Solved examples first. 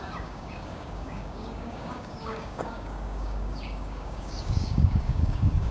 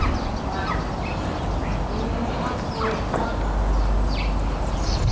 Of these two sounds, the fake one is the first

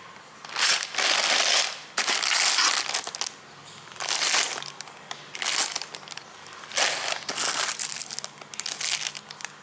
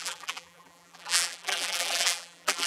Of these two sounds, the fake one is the second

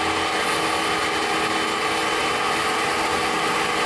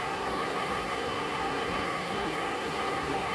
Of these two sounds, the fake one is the second